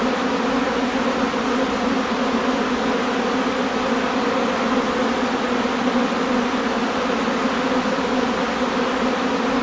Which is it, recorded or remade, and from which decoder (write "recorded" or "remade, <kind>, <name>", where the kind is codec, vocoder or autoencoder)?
recorded